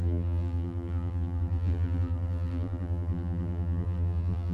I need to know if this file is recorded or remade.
remade